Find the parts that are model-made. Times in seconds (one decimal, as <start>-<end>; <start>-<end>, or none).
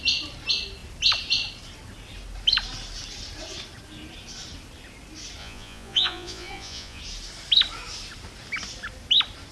5.4-7.0